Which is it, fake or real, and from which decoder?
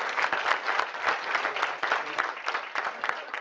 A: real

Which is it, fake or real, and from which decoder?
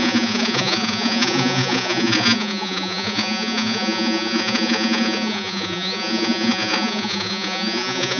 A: fake, vocoder, Vocos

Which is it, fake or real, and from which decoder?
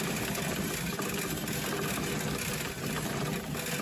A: real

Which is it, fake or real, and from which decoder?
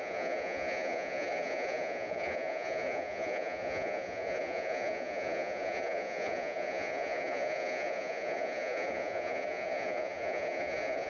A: fake, vocoder, Vocos